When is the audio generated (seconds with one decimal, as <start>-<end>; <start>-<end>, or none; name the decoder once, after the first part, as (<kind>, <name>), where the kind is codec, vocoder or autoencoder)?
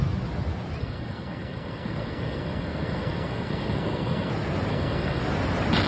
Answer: 0.8-4.3 (codec, SNAC); 4.7-5.2